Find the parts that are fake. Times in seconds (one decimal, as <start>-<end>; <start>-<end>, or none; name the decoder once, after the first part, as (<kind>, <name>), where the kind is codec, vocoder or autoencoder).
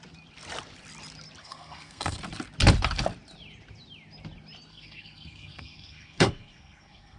1.4-2.2 (codec, SNAC); 4.7-7.2